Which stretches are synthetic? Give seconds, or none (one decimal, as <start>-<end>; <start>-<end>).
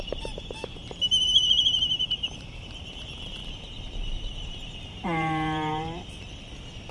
0.8-3.0; 3.4-6.5